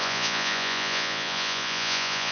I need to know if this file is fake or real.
fake